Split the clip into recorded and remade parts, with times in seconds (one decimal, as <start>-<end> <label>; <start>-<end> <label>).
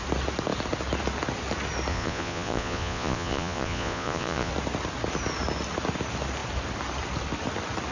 0.0-1.9 recorded; 1.9-4.5 remade; 4.5-7.9 recorded